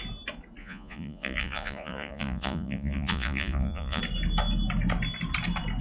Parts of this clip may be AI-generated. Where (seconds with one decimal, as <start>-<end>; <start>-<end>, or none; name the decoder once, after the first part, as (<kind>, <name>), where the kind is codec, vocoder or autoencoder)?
0.6-4.0 (vocoder, Vocos)

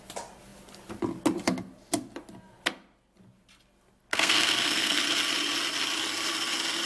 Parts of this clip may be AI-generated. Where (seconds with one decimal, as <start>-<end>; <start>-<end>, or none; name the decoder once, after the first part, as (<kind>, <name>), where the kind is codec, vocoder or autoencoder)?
4.1-5.0 (codec, SNAC)

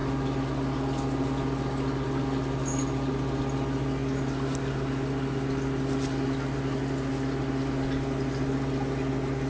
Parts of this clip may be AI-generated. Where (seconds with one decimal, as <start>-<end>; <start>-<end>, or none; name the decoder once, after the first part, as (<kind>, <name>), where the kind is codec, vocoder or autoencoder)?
none

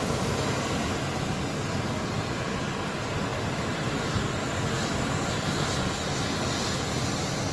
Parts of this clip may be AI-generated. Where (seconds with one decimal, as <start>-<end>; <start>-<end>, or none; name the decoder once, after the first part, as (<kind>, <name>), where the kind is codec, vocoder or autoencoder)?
none